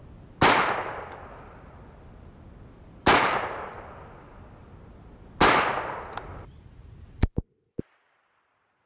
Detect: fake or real real